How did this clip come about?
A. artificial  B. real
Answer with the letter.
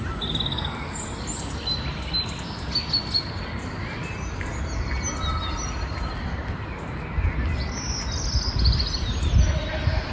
B